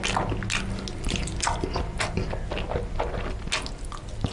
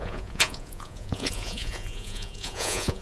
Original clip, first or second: first